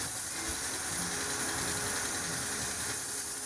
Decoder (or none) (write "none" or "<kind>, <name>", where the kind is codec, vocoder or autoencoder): none